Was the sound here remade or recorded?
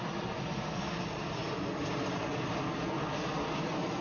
recorded